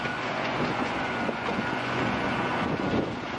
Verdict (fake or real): fake